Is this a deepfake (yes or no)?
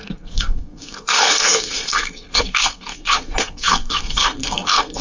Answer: yes